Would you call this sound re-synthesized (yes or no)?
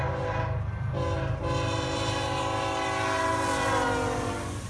no